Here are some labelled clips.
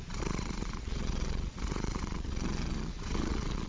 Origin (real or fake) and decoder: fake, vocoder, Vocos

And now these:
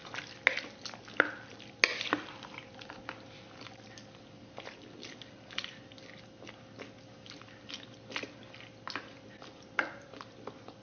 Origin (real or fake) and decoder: real